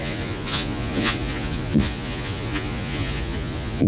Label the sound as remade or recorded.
remade